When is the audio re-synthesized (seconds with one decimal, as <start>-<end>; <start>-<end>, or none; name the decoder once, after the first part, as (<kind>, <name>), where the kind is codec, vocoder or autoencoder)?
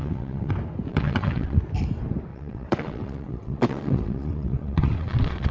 0.0-0.5 (vocoder, WaveNeXt); 0.9-1.6; 2.3-5.5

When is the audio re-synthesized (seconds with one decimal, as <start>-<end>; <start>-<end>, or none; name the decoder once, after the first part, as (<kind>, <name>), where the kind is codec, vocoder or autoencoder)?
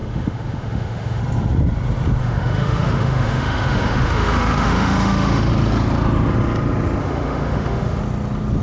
0.0-1.2 (autoencoder, DAC-VAE); 2.2-5.5; 7.0-8.0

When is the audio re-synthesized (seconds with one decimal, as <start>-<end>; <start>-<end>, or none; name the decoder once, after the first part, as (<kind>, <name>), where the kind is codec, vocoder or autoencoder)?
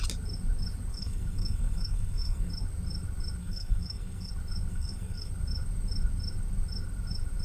0.9-2.5 (codec, SNAC); 3.4-4.3; 4.7-5.3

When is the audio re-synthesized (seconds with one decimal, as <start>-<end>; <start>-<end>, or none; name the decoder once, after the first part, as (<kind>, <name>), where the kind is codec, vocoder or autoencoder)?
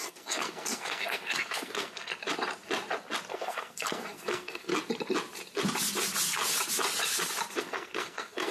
0.0-2.1 (codec, SNAC); 3.3-4.7; 7.6-8.5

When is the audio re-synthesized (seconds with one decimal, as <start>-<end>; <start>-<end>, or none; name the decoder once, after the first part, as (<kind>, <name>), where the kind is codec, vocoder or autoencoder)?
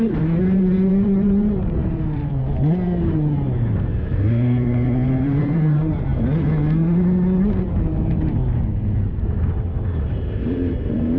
0.0-2.4 (vocoder, BigVGAN v2); 3.1-6.1; 7.6-8.4; 9.0-11.2